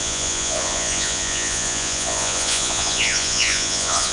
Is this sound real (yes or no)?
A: no